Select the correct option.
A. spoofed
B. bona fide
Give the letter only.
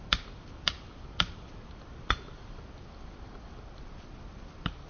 A